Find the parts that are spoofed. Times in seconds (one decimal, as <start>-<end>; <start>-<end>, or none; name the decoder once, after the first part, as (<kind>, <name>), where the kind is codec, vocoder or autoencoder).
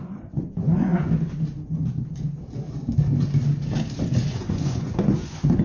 0.0-0.9 (vocoder, Vocos); 4.3-5.6